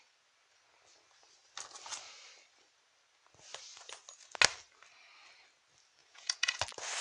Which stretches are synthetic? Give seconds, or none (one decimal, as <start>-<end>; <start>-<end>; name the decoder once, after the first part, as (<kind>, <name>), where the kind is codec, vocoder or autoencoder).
6.0-6.6 (vocoder, Vocos)